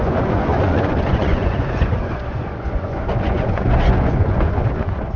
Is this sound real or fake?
fake